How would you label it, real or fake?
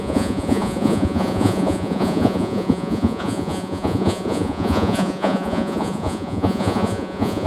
fake